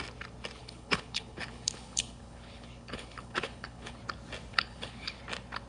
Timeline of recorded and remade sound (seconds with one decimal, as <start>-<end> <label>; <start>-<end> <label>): 0.0-0.6 recorded; 0.6-4.0 remade; 4.0-4.5 recorded; 4.5-5.2 remade; 5.2-5.7 recorded